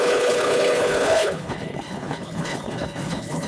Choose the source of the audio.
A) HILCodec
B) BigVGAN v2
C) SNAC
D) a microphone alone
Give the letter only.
A